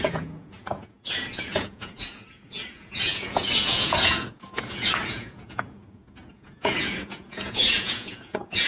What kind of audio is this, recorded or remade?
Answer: remade